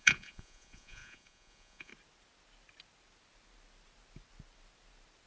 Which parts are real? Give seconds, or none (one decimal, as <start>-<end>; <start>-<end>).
1.9-5.3